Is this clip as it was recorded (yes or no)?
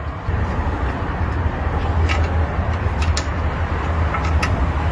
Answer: yes